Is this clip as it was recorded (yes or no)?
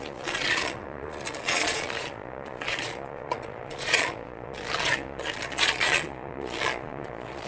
no